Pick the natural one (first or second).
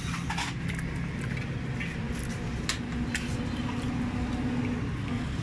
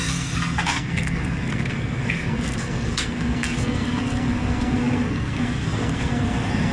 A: first